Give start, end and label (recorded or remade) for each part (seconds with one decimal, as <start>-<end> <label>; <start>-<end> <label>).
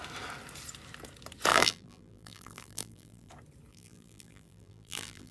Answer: 0.0-1.5 recorded; 1.5-3.3 remade; 3.3-3.7 recorded; 3.7-5.3 remade